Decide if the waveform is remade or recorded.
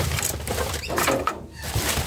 recorded